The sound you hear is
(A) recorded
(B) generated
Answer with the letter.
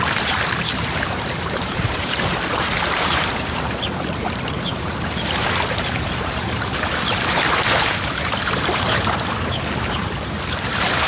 B